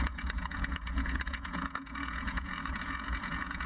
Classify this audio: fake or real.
fake